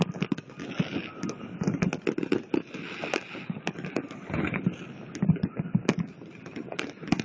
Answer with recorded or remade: recorded